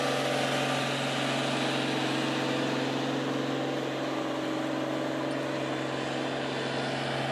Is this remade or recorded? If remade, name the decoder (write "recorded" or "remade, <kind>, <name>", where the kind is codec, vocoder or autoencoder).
recorded